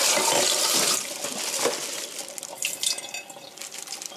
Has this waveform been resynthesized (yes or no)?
yes